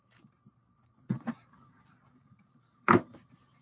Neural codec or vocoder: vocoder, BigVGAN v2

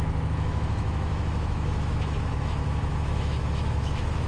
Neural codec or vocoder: autoencoder, DAC-VAE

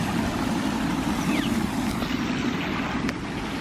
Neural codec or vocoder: none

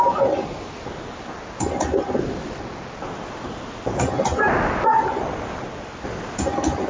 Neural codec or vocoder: none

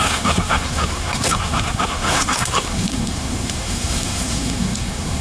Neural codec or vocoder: codec, SNAC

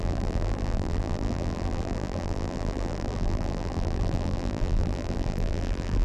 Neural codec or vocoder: vocoder, BigVGAN v2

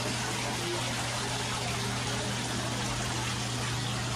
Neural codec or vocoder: none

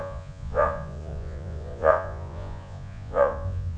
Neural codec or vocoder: vocoder, Vocos